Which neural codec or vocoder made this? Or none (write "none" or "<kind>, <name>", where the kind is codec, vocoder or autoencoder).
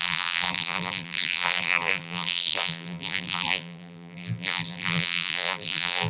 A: vocoder, BigVGAN v2